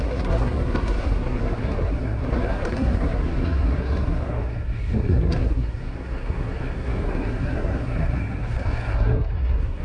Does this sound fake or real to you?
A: fake